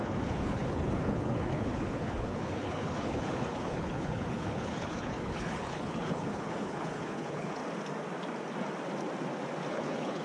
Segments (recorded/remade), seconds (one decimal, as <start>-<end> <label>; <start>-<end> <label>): 0.0-7.6 remade; 7.6-9.7 recorded; 9.7-10.2 remade